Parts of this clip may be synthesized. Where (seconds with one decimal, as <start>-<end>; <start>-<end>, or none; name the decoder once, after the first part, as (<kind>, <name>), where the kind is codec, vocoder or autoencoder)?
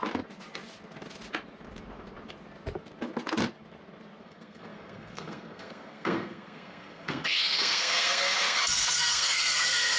4.2-10.0 (codec, SNAC)